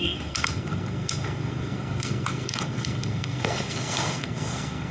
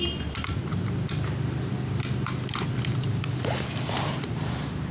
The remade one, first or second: first